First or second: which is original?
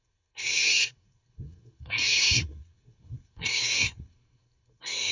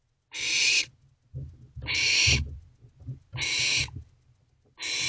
second